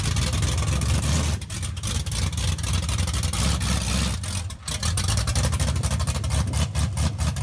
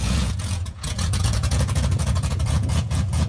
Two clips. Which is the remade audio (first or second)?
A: second